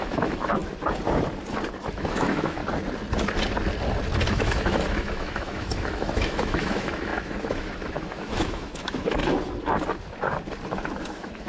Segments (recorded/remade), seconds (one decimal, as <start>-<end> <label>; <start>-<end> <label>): 0.0-0.6 remade; 0.6-1.9 recorded; 1.9-2.6 remade; 2.6-4.3 recorded; 4.3-9.2 remade; 9.2-11.1 recorded; 11.1-11.5 remade